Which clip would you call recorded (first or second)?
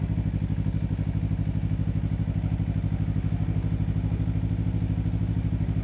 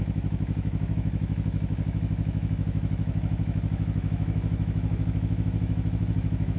first